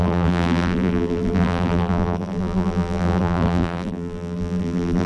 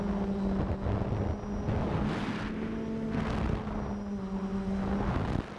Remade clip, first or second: first